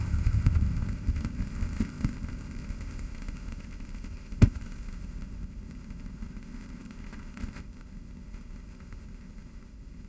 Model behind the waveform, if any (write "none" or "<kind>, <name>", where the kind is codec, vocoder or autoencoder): codec, ZipCodec